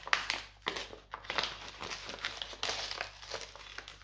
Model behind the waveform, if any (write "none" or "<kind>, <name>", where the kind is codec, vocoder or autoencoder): none